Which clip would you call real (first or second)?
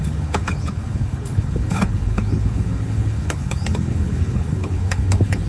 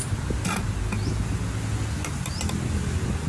second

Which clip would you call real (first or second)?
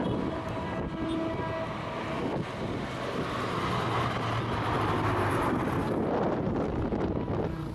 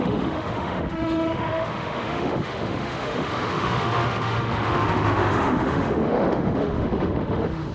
first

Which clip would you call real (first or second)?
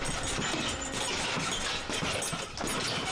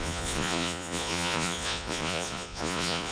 first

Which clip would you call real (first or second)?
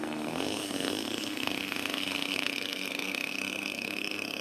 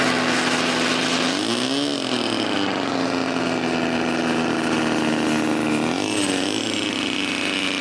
second